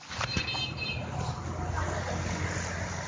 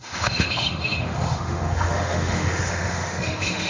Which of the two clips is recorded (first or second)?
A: first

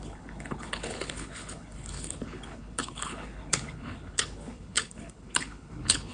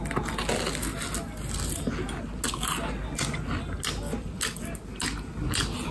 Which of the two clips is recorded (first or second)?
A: second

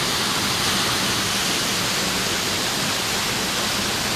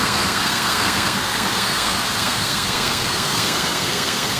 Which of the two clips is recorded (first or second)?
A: first